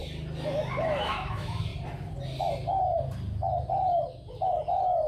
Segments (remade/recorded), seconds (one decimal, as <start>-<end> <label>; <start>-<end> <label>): 0.0-0.8 recorded; 0.8-1.7 remade; 1.7-5.1 recorded